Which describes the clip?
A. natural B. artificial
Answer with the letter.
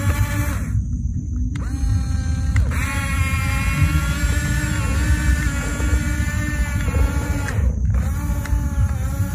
A